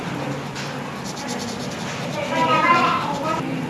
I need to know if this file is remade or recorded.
recorded